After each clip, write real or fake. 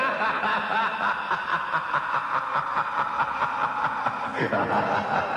real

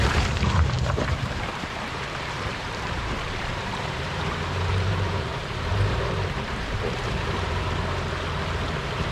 fake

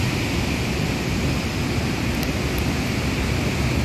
real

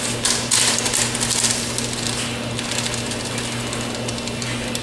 real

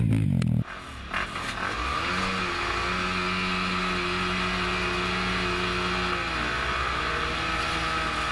real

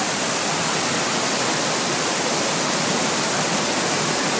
real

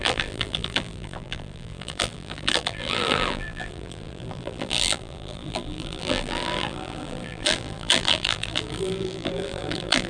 fake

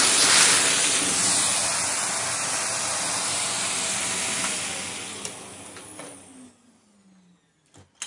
real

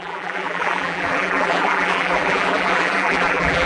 fake